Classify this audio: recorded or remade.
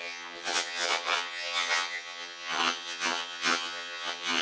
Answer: remade